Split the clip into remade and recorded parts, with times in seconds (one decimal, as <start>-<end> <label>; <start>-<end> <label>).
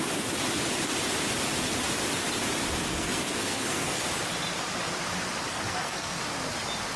0.0-2.9 recorded; 2.9-4.0 remade; 4.0-5.5 recorded; 5.5-6.2 remade; 6.2-7.0 recorded